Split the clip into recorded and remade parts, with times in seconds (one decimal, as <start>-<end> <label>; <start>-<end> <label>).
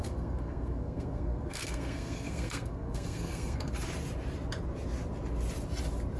0.0-3.7 remade; 3.7-6.2 recorded